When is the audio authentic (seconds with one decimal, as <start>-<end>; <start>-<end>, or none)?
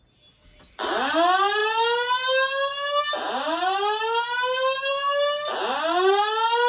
0.0-6.7